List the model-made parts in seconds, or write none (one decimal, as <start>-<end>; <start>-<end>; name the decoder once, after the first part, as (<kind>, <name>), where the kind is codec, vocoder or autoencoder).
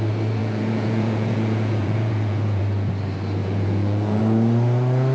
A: 0.4-2.9 (vocoder, Vocos); 3.4-4.2